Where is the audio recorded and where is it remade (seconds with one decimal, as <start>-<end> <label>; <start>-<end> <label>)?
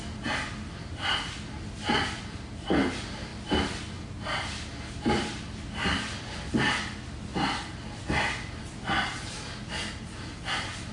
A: 0.0-10.9 recorded